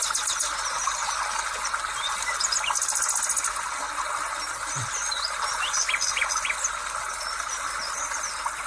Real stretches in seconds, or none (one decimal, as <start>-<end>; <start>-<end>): 0.0-8.7